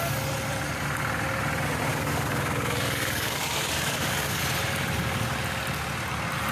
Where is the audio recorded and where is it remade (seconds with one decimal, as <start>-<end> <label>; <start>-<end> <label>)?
0.0-1.9 recorded; 1.9-4.4 remade; 4.4-6.5 recorded